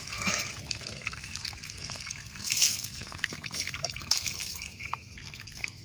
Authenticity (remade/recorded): remade